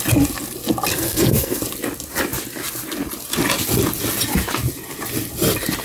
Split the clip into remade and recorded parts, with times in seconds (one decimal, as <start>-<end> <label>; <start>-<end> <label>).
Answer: 0.0-0.9 recorded; 0.9-1.6 remade; 1.6-5.8 recorded